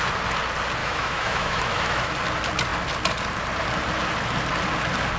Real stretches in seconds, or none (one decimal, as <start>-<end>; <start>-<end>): 0.0-0.8; 2.1-5.2

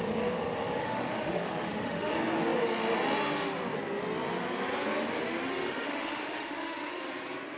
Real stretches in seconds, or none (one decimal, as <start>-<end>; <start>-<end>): 0.0-0.8; 2.1-5.5; 7.1-7.6

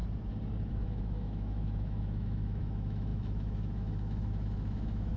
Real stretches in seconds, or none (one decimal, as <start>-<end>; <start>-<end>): 0.0-0.7